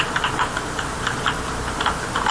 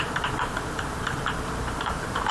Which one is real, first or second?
first